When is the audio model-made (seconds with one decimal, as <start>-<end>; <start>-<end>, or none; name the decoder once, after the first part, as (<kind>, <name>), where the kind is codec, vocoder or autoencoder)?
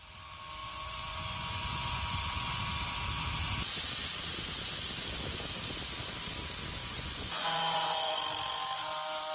0.6-2.6 (vocoder, Vocos); 6.8-8.2